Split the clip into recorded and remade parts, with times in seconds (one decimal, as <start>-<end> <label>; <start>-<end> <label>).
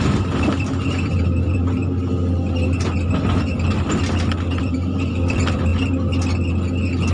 0.0-1.8 remade; 1.8-4.6 recorded; 4.6-5.7 remade; 5.7-7.1 recorded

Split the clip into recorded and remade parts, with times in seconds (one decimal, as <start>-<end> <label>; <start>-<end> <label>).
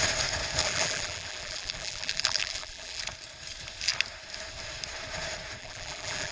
0.0-0.6 recorded; 0.6-3.0 remade; 3.0-5.6 recorded; 5.6-6.3 remade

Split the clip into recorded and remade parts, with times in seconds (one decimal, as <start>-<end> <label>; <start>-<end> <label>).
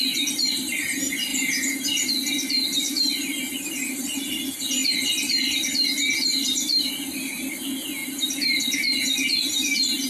0.0-1.3 recorded; 1.3-2.1 remade; 2.1-8.0 recorded; 8.0-8.6 remade; 8.6-10.1 recorded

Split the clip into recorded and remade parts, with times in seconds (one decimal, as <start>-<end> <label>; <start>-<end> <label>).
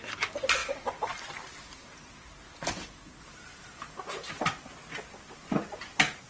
0.0-0.6 recorded; 0.6-2.8 remade; 2.8-3.3 recorded; 3.3-3.9 remade; 3.9-6.3 recorded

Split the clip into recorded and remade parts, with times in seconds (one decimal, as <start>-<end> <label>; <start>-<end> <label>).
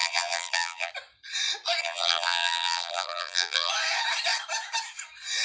0.0-0.9 remade; 0.9-1.8 recorded; 1.8-3.7 remade; 3.7-5.4 recorded